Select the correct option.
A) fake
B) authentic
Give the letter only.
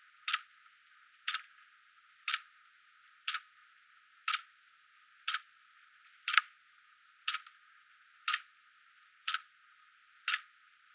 B